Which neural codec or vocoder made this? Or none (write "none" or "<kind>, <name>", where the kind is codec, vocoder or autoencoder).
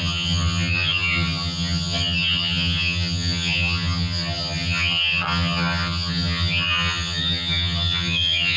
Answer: vocoder, HiFi-GAN